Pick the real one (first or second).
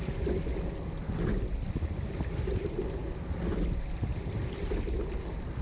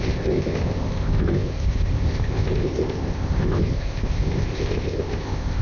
first